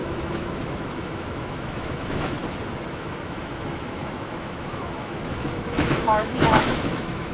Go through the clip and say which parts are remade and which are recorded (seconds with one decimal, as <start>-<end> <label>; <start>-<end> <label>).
0.0-2.4 remade; 2.4-2.9 recorded; 2.9-7.3 remade